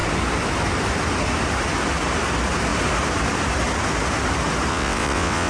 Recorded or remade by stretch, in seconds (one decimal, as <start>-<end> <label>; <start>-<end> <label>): 0.0-4.7 recorded; 4.7-5.5 remade